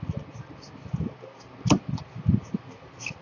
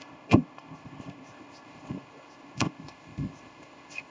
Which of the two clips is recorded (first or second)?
first